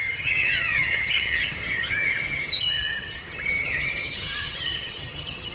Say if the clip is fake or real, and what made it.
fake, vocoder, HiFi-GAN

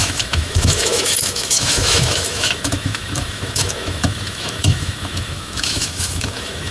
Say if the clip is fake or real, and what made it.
fake, autoencoder, DAC-VAE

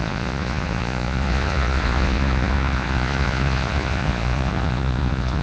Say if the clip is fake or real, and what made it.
fake, vocoder, Vocos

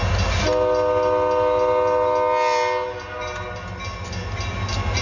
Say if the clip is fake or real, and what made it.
real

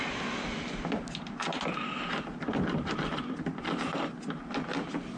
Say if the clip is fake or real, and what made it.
real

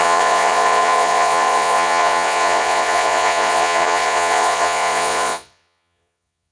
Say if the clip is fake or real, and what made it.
fake, vocoder, Vocos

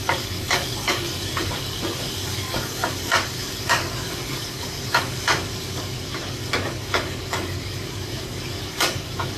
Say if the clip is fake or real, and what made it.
fake, codec, DAC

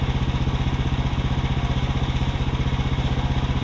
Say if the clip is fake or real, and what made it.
real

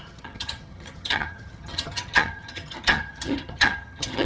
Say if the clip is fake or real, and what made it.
fake, vocoder, HiFi-GAN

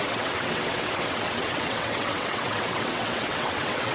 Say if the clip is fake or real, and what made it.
fake, vocoder, WaveNeXt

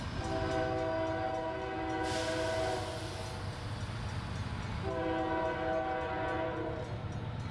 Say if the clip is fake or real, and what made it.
real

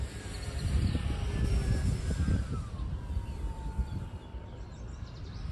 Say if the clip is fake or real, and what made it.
fake, vocoder, BigVGAN v2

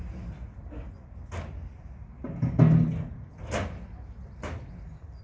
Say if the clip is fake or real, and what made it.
real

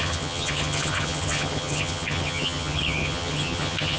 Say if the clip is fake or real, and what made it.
fake, vocoder, HiFi-GAN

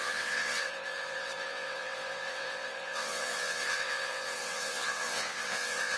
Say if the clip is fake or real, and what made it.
fake, vocoder, WaveNeXt